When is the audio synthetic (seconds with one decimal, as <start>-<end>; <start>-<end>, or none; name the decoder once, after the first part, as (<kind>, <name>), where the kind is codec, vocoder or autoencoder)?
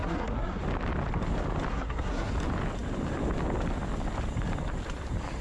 0.0-0.6 (codec, SNAC); 1.7-2.3